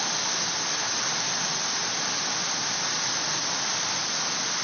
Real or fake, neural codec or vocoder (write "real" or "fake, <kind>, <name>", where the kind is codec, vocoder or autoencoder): real